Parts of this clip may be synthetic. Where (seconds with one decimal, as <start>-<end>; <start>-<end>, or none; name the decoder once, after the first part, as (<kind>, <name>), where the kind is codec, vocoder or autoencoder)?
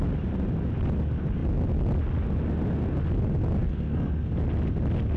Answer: 3.6-4.3 (codec, SNAC)